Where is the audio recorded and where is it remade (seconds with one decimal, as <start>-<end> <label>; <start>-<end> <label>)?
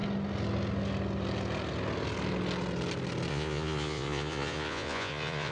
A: 0.0-3.3 recorded; 3.3-5.5 remade